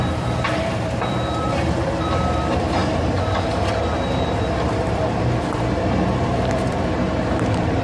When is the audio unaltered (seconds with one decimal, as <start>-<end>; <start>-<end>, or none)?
none